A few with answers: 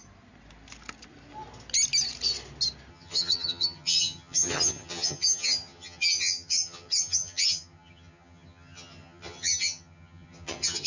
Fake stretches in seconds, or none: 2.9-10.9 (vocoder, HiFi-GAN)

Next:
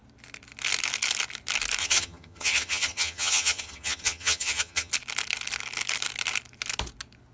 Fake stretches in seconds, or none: 1.8-4.9 (vocoder, HiFi-GAN)

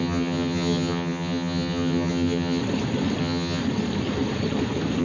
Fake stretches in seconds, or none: 0.0-2.6 (vocoder, HiFi-GAN); 3.2-3.6

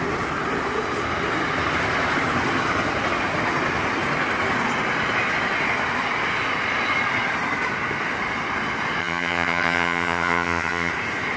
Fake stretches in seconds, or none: 9.0-10.9 (vocoder, HiFi-GAN)

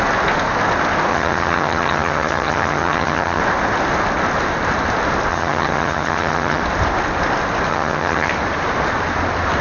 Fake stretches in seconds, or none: 1.1-3.4 (vocoder, HiFi-GAN); 5.3-6.6; 7.7-8.3

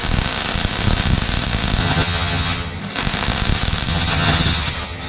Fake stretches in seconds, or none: 1.8-2.8 (vocoder, HiFi-GAN); 3.9-5.1